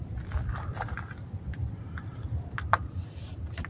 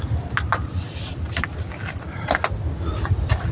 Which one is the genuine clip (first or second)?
first